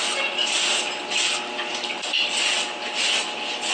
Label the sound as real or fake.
real